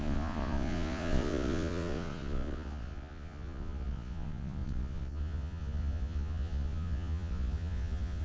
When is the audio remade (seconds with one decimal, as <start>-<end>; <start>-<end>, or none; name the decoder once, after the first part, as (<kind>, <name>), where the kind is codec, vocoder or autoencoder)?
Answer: 0.0-8.2 (vocoder, Vocos)